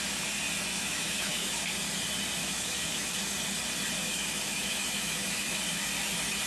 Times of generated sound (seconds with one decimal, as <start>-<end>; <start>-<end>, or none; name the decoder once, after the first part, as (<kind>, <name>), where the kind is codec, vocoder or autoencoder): 0.7-1.6 (autoencoder, DAC-VAE); 2.4-3.1; 4.0-5.6